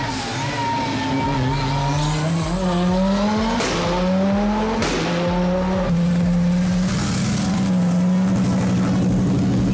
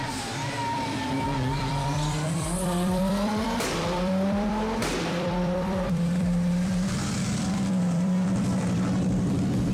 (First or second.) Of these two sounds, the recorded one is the first